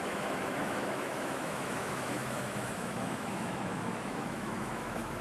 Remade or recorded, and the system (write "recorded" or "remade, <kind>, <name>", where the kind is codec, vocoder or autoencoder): remade, autoencoder, DAC-VAE